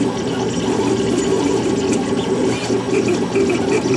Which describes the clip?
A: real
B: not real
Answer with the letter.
A